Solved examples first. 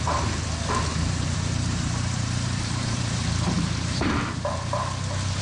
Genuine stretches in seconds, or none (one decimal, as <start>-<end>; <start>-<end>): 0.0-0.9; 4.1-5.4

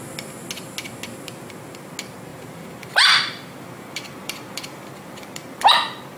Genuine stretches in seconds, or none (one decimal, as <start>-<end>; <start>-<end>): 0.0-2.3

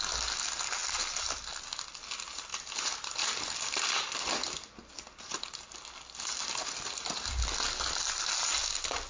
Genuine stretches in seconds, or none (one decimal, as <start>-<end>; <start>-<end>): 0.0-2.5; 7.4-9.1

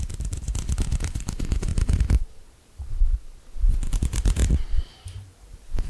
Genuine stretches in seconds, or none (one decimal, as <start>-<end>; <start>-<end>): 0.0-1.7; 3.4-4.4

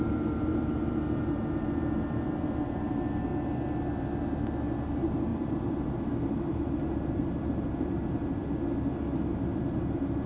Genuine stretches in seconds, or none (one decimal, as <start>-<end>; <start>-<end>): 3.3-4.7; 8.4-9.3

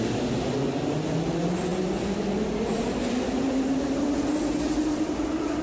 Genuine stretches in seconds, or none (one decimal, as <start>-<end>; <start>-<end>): 0.0-5.6